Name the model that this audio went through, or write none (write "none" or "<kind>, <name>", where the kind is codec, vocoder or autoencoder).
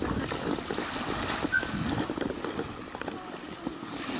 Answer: none